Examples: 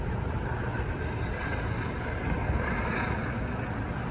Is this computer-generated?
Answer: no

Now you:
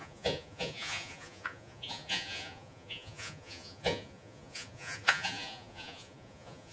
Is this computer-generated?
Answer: yes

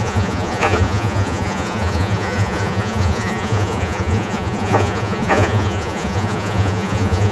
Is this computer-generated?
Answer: yes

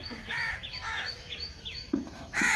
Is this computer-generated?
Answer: yes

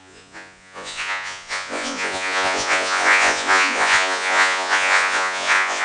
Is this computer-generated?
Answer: yes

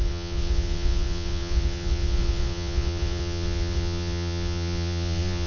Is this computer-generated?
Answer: yes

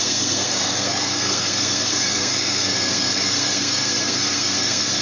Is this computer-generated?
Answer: yes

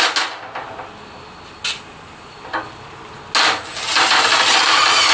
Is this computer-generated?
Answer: no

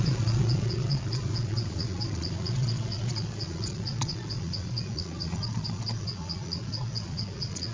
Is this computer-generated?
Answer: yes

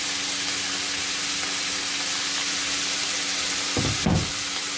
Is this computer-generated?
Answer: no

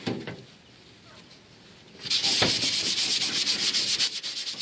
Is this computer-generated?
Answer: no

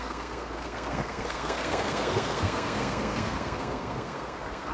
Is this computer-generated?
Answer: yes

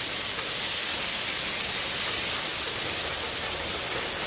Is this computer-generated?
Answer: no